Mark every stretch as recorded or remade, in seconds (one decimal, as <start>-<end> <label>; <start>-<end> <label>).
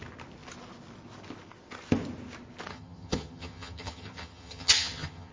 0.0-2.7 recorded; 2.7-5.3 remade